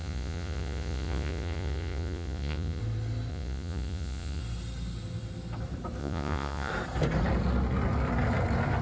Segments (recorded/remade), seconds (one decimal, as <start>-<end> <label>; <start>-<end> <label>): 0.0-2.8 remade; 2.8-3.3 recorded; 3.3-4.4 remade; 4.4-6.0 recorded; 6.0-6.7 remade; 6.7-8.8 recorded